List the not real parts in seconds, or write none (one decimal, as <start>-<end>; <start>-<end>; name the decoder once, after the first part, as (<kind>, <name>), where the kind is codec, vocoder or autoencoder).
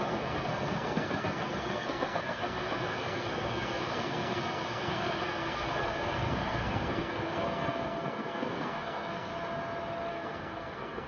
0.0-9.3 (codec, SNAC); 10.1-11.1